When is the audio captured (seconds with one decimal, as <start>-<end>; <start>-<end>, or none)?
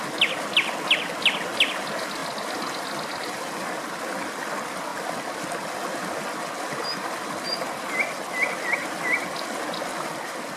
0.0-10.6